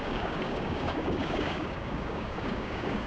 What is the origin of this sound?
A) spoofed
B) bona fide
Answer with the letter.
A